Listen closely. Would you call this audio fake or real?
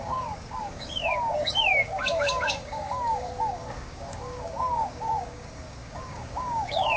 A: fake